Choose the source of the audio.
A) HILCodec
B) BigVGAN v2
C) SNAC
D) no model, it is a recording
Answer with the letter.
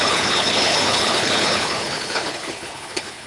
A